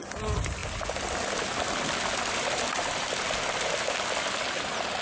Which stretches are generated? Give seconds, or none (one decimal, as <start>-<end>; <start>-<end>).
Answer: none